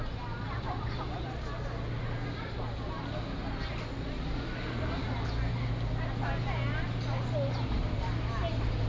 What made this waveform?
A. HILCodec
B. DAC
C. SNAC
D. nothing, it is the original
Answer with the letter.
D